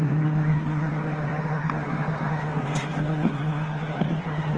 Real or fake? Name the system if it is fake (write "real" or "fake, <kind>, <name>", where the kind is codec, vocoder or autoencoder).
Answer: fake, codec, SNAC